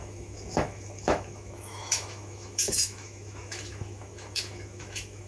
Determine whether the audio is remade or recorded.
remade